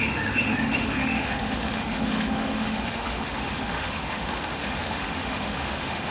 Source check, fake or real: fake